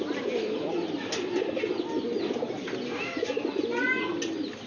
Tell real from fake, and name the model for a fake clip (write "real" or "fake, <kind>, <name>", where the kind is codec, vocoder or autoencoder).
real